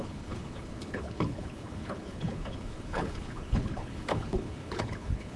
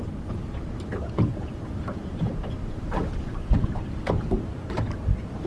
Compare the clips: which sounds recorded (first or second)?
second